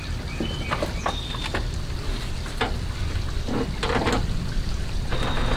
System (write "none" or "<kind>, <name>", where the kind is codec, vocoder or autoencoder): none